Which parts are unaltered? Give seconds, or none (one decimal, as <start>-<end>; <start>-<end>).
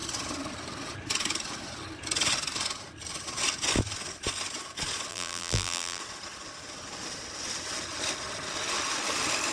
0.0-5.1; 6.0-9.5